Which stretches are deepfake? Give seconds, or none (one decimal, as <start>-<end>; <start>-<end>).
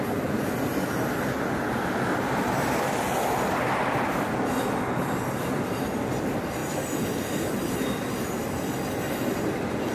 none